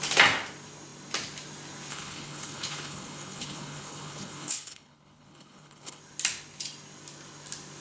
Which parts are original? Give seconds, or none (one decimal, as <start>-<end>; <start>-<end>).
0.0-1.9; 6.0-7.8